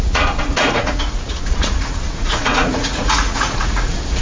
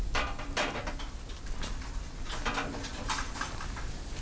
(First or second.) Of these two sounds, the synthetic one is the first